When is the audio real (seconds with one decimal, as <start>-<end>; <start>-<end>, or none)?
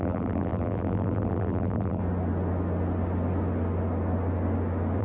2.0-5.0